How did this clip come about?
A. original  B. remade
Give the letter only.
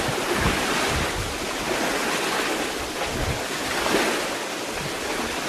A